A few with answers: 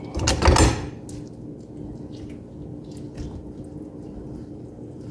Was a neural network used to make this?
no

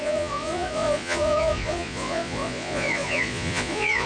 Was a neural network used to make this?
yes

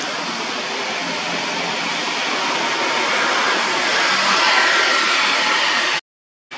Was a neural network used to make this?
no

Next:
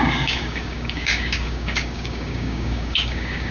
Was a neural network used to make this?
yes